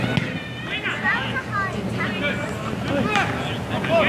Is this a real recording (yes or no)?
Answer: yes